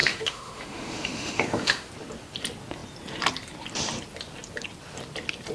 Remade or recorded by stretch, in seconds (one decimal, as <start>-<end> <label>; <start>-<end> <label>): 0.0-1.9 remade; 1.9-5.5 recorded